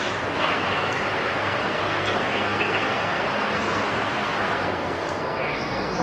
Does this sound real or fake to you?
fake